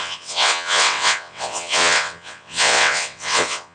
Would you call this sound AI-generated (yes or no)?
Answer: yes